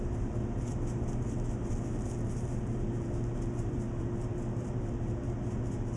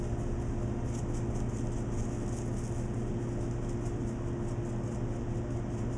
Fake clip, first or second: first